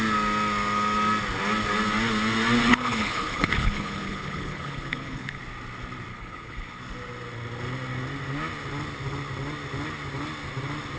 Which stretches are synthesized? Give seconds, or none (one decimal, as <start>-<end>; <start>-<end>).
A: 2.7-5.4; 6.1-6.8